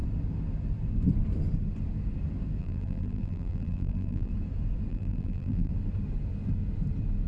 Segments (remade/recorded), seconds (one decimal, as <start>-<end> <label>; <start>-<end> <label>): 0.0-2.6 recorded; 2.6-4.3 remade; 4.3-4.9 recorded; 4.9-5.7 remade; 5.7-7.3 recorded